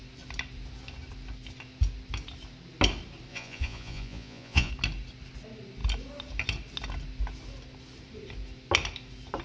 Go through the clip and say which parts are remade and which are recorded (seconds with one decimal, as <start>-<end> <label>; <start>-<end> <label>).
0.0-3.3 recorded; 3.3-4.7 remade; 4.7-9.4 recorded